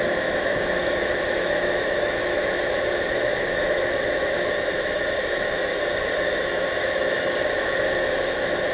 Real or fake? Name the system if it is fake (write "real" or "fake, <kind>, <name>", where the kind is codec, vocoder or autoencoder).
fake, autoencoder, DAC-VAE